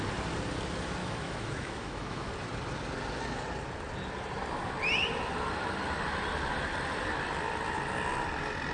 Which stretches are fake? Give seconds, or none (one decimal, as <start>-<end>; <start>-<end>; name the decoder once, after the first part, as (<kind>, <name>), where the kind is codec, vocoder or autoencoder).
1.0-2.3 (autoencoder, DAC-VAE)